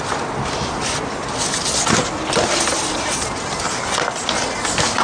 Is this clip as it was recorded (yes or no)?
yes